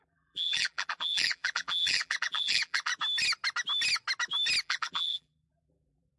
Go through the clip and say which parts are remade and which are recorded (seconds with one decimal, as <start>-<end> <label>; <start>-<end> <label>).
0.0-2.9 remade; 2.9-4.6 recorded; 4.6-6.2 remade